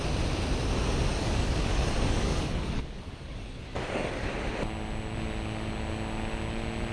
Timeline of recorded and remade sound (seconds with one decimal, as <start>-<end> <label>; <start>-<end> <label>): 0.0-1.1 recorded; 1.1-4.3 remade; 4.3-6.9 recorded